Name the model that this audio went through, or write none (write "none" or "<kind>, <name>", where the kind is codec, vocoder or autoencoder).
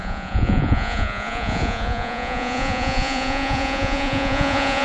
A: vocoder, Vocos